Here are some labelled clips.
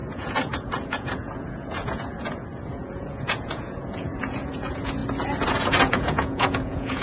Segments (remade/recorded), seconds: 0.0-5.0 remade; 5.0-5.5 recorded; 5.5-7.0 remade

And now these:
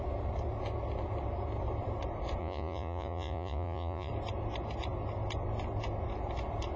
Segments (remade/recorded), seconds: 0.0-2.4 recorded; 2.4-4.1 remade; 4.1-6.8 recorded

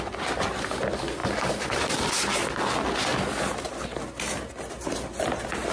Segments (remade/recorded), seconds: 0.0-1.2 recorded; 1.2-2.6 remade; 2.6-3.1 recorded; 3.1-3.7 remade; 3.7-5.7 recorded

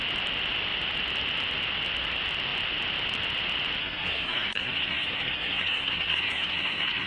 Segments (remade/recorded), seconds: 0.0-3.8 recorded; 3.8-7.1 remade

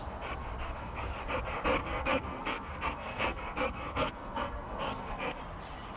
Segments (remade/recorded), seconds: 0.0-0.4 recorded; 0.4-1.1 remade; 1.1-1.8 recorded; 1.8-5.4 remade; 5.4-6.0 recorded